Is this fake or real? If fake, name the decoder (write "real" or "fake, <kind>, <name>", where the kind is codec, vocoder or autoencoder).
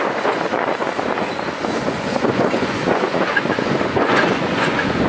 fake, vocoder, Vocos